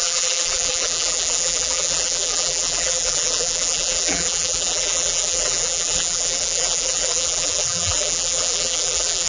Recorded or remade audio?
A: remade